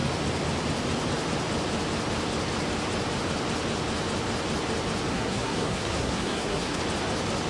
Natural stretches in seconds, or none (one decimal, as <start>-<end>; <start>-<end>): 0.0-5.1; 6.8-7.5